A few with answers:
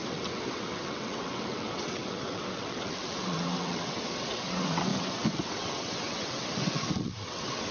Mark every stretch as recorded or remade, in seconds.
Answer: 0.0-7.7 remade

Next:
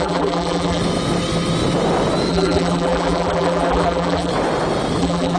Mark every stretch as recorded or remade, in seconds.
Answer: 0.0-0.8 remade; 0.8-2.3 recorded; 2.3-4.3 remade; 4.3-5.0 recorded; 5.0-5.4 remade

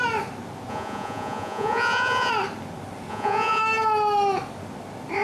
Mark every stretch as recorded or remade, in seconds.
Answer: 0.0-0.7 recorded; 0.7-2.3 remade; 2.3-3.1 recorded; 3.1-3.6 remade; 3.6-5.2 recorded

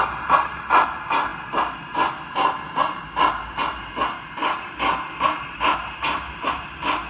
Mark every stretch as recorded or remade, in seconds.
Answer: 0.0-4.4 recorded; 4.4-6.5 remade; 6.5-7.1 recorded